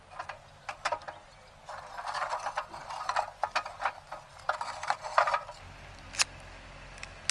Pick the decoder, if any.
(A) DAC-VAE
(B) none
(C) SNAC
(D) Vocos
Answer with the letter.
B